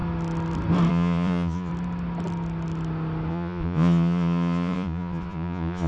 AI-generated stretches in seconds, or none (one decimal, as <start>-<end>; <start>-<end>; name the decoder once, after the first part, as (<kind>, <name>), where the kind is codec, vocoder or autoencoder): 0.9-1.7 (vocoder, Vocos); 3.3-5.9